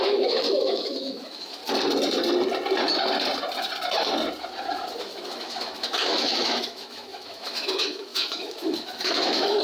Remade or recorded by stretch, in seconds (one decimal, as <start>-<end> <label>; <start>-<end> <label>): 0.0-1.6 remade; 1.6-5.0 recorded; 5.0-9.6 remade